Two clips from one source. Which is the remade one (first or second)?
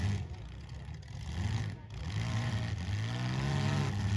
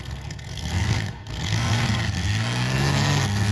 second